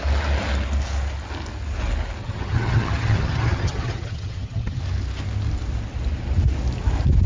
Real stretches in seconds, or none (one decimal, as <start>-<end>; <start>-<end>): 0.0-2.2; 4.8-7.3